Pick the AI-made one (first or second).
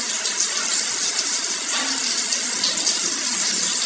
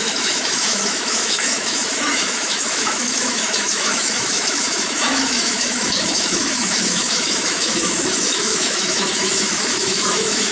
second